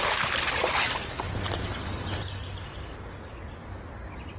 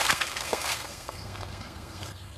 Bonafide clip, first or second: first